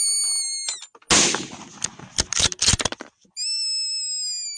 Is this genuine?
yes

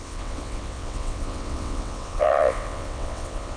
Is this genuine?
no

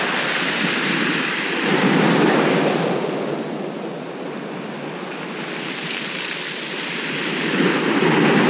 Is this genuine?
yes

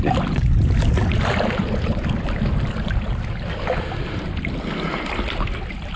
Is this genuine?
yes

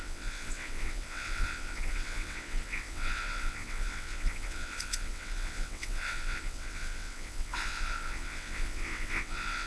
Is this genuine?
no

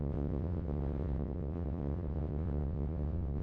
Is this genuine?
no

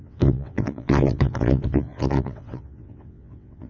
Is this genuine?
no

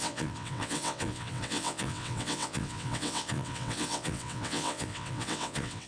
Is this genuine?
no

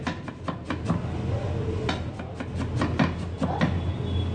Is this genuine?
yes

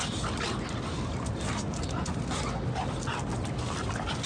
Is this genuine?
yes